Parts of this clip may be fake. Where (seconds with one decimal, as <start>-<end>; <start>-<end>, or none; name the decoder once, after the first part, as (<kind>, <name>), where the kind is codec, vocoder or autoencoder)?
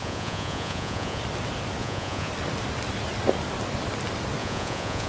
0.0-1.2 (vocoder, Vocos); 1.8-2.3; 4.4-5.1